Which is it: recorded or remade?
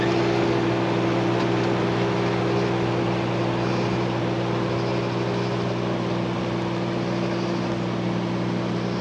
recorded